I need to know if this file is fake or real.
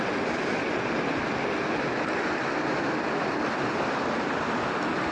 real